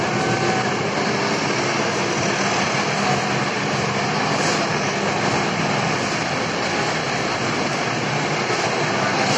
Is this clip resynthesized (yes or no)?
no